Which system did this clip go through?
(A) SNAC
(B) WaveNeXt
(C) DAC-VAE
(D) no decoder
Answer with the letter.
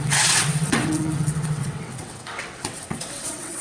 B